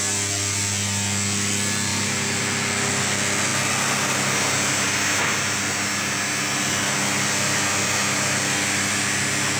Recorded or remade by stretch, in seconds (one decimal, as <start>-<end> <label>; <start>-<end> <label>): 0.0-1.9 recorded; 1.9-2.4 remade; 2.4-9.6 recorded